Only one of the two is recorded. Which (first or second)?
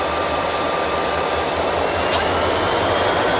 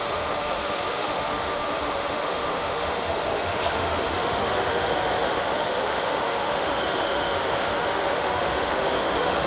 first